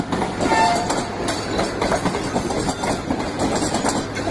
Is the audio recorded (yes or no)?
yes